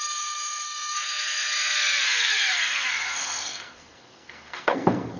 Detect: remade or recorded remade